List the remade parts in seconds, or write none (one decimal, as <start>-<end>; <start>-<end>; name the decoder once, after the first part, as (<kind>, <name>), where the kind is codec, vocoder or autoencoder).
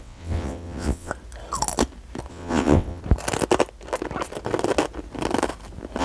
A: 0.0-1.1 (vocoder, WaveNeXt); 2.3-3.0